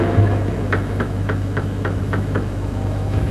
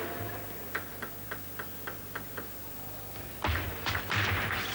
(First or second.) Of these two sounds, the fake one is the first